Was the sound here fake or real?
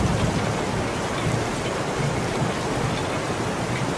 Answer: real